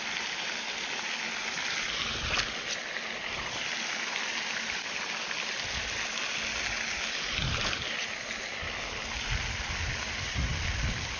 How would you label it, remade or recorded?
recorded